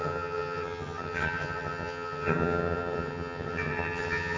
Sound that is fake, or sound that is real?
fake